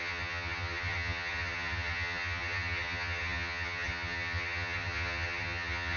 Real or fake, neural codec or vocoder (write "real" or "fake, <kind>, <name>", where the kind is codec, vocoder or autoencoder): fake, vocoder, HiFi-GAN